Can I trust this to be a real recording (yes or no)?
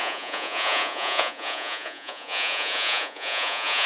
no